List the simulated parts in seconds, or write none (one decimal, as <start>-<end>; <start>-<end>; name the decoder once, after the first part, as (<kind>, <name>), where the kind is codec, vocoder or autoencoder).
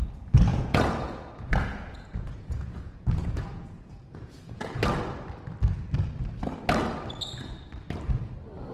0.5-4.8 (vocoder, Vocos)